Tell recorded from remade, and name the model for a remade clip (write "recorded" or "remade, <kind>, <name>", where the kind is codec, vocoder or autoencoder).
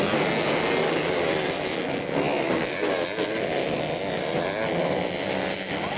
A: recorded